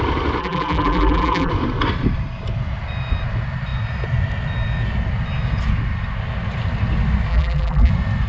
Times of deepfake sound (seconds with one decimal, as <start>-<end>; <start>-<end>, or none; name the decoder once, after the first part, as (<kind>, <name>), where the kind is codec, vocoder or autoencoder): 0.4-1.5 (vocoder, BigVGAN v2); 7.3-7.9